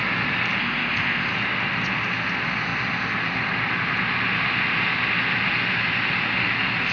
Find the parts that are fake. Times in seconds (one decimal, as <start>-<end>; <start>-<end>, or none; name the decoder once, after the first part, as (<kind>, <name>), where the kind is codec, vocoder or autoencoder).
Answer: 0.6-1.3 (codec, ZipCodec)